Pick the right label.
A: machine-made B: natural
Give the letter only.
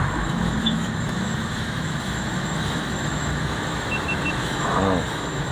A